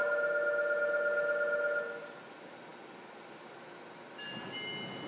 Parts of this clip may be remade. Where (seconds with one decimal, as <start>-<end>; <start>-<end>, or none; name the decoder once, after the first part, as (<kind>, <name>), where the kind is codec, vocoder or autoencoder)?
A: none